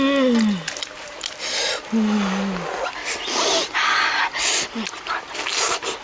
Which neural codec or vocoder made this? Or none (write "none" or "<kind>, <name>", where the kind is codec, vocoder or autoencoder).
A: none